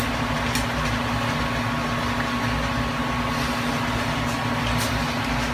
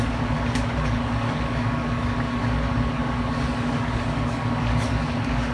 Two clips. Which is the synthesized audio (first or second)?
second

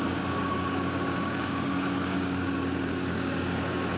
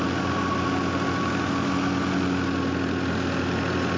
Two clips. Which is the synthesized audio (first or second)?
first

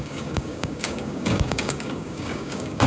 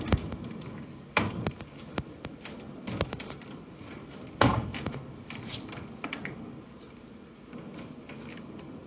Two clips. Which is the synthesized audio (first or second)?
first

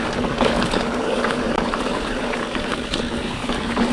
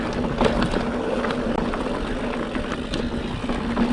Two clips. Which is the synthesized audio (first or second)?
first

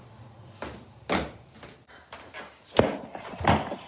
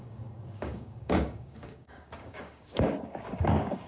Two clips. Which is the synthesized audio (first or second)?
second